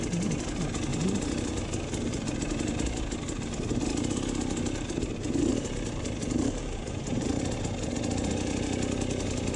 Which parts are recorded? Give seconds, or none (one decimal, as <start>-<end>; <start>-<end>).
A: 0.0-0.9; 1.6-5.5; 7.4-9.6